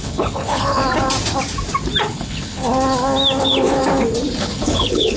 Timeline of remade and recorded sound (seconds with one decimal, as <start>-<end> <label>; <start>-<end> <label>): 0.0-0.8 remade; 0.8-2.1 recorded; 2.1-2.6 remade; 2.6-3.4 recorded; 3.4-3.8 remade; 3.8-4.4 recorded; 4.4-5.2 remade